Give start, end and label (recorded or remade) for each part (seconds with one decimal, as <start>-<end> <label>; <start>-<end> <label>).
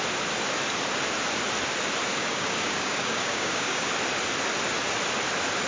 0.0-2.1 recorded; 2.1-3.9 remade; 3.9-5.7 recorded